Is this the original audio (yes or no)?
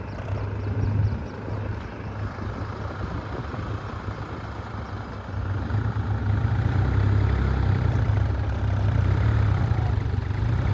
yes